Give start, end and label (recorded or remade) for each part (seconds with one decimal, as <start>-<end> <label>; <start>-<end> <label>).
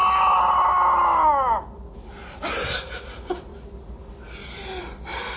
0.0-5.4 recorded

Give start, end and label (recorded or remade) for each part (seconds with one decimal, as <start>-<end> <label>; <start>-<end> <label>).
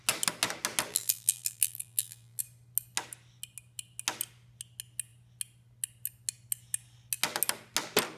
0.0-0.9 recorded; 0.9-2.4 remade; 2.4-8.2 recorded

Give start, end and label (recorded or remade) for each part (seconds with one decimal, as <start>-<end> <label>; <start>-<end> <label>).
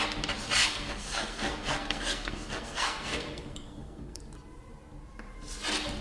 0.0-0.6 recorded; 0.6-4.2 remade; 4.2-6.0 recorded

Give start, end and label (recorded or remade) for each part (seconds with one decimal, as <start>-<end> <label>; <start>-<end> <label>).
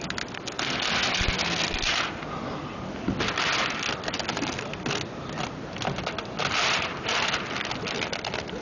0.0-8.6 recorded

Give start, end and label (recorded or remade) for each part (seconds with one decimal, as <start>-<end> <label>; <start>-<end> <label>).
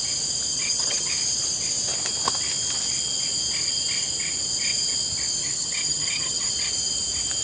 0.0-0.5 recorded; 0.5-1.1 remade; 1.1-5.4 recorded; 5.4-6.5 remade; 6.5-7.4 recorded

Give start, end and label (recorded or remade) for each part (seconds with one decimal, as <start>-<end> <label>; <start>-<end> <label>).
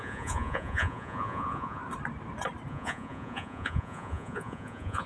0.0-1.8 remade; 1.8-2.7 recorded; 2.7-5.1 remade